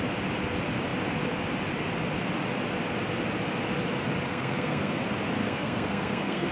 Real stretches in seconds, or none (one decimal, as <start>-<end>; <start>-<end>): 0.0-4.3; 5.0-5.4